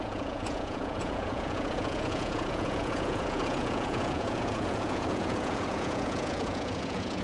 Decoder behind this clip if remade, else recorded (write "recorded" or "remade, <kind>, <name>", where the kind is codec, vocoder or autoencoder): remade, vocoder, Vocos